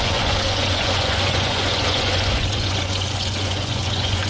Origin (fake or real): fake